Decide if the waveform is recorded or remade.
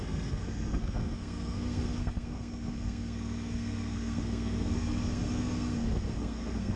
remade